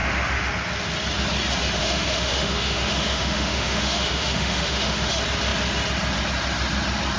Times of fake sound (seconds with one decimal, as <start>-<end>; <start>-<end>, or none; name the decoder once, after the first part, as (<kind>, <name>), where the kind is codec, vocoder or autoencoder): 0.0-0.5 (autoencoder, DAC-VAE); 1.8-5.1